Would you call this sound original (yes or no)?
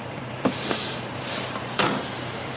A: no